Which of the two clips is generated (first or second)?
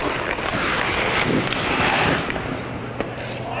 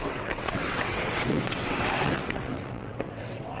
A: second